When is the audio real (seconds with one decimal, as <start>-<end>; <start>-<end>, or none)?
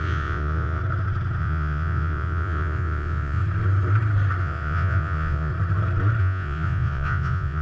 0.8-1.4; 3.4-4.4; 5.5-6.2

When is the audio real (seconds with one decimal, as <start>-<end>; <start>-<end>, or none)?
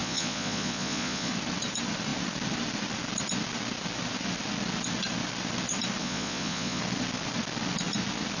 1.3-6.0; 6.8-8.4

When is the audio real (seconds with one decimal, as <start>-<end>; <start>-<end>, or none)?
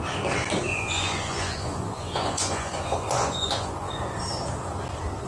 0.0-0.7; 3.9-5.3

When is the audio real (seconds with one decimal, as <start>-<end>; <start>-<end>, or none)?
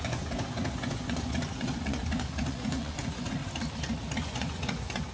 3.4-4.2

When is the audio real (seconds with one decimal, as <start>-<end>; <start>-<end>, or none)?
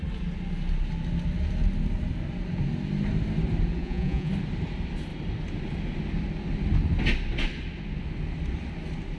0.0-3.8; 4.3-9.2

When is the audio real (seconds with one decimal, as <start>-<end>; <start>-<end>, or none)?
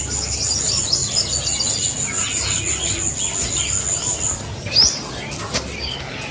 0.0-6.3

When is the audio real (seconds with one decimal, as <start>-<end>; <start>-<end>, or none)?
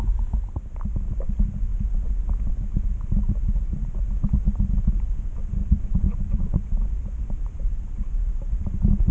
0.0-5.6; 6.9-9.1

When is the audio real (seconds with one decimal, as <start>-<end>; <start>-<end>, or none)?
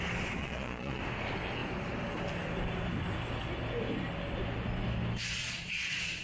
0.0-0.4; 1.0-5.4